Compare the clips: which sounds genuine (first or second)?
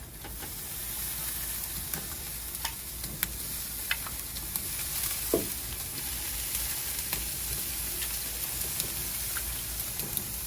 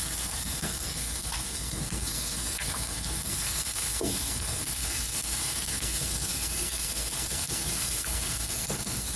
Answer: first